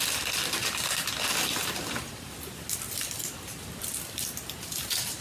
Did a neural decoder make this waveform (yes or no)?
yes